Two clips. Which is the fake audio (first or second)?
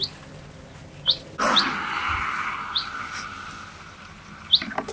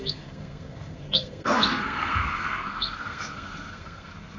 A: second